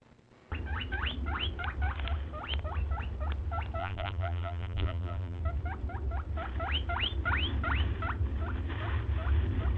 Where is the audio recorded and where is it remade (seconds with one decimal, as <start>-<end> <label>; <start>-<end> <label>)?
0.0-3.8 recorded; 3.8-5.4 remade; 5.4-9.8 recorded